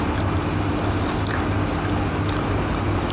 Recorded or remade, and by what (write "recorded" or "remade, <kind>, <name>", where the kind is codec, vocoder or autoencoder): recorded